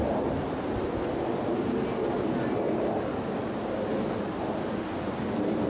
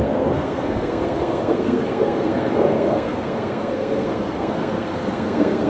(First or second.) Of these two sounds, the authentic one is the first